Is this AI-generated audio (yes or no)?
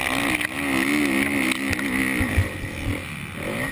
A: no